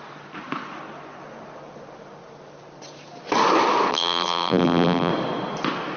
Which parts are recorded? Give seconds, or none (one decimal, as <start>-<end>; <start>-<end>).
0.0-3.9; 5.1-6.0

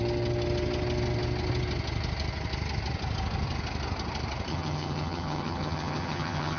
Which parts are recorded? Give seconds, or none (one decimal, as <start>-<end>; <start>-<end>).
0.0-4.5

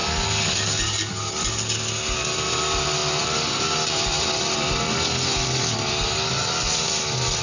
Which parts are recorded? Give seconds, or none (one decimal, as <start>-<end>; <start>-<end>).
0.0-7.4

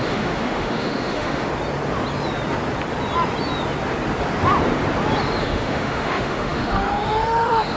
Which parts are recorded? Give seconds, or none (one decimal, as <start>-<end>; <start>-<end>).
1.5-5.4

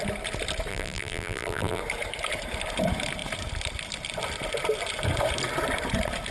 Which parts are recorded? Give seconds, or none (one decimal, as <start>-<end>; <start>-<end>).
0.0-0.7; 1.8-6.3

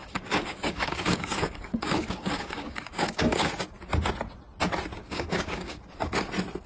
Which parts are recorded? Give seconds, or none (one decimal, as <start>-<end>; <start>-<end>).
3.5-5.0; 5.8-6.7